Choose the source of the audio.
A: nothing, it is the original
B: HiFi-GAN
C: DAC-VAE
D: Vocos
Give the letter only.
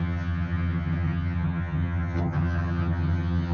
B